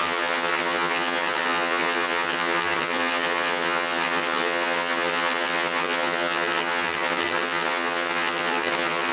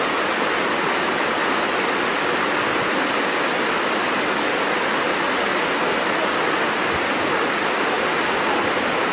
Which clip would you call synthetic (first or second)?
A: first